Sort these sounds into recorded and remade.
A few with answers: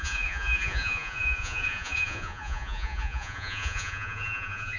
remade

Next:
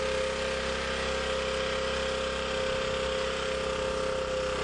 recorded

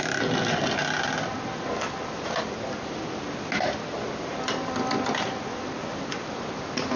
recorded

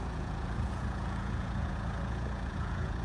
remade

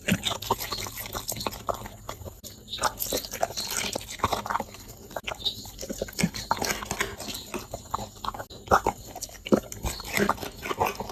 recorded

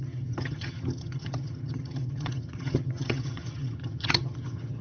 remade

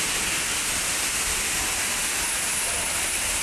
recorded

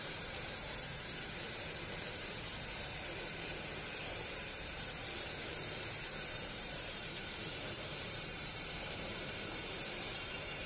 remade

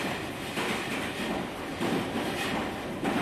remade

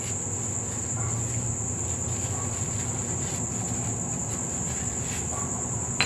recorded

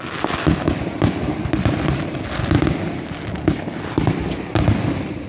recorded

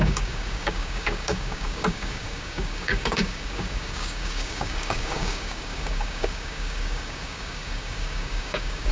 remade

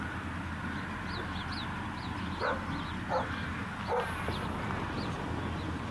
recorded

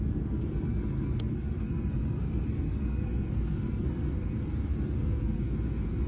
remade